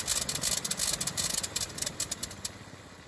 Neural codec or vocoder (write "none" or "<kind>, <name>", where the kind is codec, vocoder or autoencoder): none